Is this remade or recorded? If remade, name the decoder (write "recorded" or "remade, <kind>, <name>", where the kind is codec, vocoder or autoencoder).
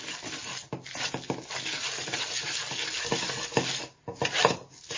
recorded